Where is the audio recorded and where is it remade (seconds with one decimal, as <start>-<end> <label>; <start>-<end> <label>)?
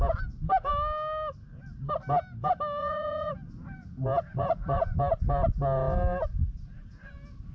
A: 0.0-2.8 recorded; 2.8-3.3 remade; 3.3-4.3 recorded; 4.3-5.0 remade; 5.0-6.4 recorded; 6.4-7.1 remade; 7.1-7.5 recorded